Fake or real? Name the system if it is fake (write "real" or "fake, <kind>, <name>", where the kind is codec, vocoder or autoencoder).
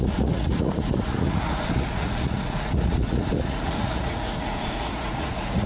fake, vocoder, Vocos